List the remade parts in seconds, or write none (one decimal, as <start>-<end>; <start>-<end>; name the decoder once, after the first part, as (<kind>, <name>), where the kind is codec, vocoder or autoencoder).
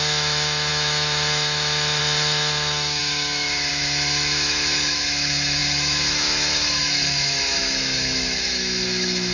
0.0-9.3 (autoencoder, DAC-VAE)